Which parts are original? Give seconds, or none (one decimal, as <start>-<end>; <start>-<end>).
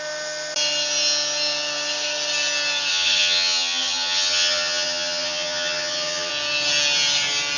0.0-2.9; 6.3-7.6